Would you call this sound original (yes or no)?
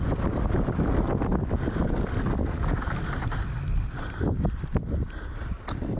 no